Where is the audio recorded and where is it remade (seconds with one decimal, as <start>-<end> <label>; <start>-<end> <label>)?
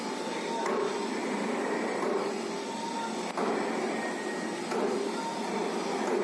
0.0-6.2 recorded